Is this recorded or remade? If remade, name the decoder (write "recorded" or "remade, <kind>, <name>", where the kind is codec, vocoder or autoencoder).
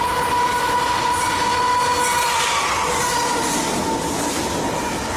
recorded